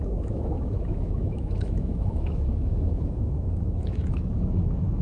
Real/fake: fake